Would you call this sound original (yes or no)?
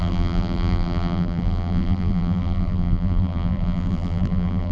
no